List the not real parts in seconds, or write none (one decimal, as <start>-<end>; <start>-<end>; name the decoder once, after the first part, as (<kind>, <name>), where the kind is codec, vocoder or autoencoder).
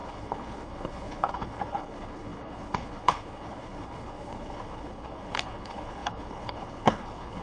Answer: 0.0-7.4 (codec, HILCodec)